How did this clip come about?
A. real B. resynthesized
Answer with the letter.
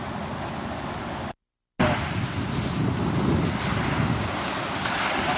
A